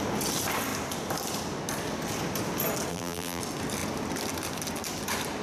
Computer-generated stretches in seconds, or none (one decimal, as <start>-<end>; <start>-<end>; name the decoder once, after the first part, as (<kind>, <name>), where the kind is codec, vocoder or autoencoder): 2.9-3.4 (vocoder, BigVGAN v2)

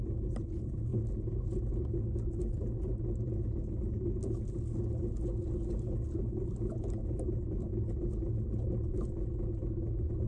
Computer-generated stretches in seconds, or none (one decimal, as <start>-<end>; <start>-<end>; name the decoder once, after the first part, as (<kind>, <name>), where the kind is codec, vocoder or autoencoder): none

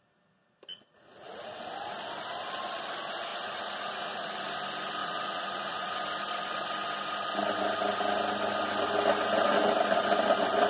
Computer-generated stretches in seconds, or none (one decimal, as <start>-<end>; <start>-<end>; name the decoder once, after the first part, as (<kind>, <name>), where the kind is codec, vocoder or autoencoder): 0.7-1.6 (vocoder, Vocos); 3.3-4.4; 5.0-5.9

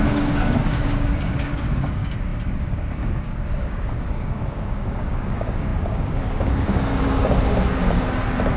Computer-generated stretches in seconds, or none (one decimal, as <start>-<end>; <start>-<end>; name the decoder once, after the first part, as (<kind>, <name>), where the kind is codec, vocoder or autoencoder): 0.0-7.2 (codec, DAC)

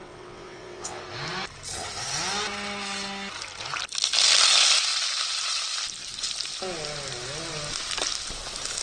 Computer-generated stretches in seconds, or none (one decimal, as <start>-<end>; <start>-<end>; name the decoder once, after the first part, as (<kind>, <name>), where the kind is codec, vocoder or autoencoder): 0.0-1.0 (vocoder, WaveNeXt)

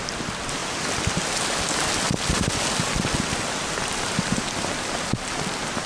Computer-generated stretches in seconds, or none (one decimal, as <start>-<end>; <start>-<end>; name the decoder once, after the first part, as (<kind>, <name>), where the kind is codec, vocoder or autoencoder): none